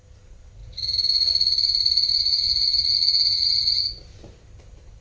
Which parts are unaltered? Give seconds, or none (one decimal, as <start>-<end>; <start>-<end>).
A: 0.0-0.6; 1.3-2.3; 3.9-5.0